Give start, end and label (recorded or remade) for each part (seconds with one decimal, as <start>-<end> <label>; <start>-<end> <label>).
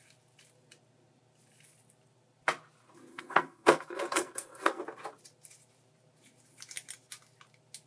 0.0-3.1 recorded; 3.1-4.8 remade; 4.8-7.9 recorded